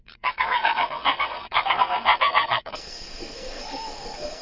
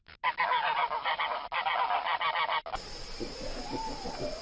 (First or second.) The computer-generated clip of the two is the first